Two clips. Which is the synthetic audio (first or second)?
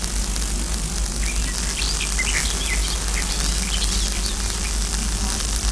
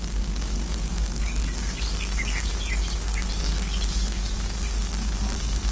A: second